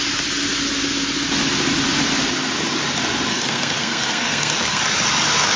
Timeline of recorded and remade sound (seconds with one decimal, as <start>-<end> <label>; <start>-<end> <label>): 0.0-3.3 recorded; 3.3-4.8 remade; 4.8-5.6 recorded